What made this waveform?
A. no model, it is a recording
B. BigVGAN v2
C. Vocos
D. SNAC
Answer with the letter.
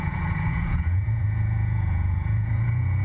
C